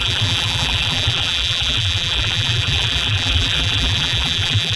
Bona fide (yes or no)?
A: no